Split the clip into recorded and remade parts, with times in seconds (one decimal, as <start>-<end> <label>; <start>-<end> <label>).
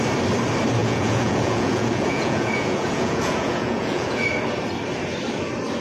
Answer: 0.0-0.8 recorded; 0.8-4.3 remade; 4.3-5.8 recorded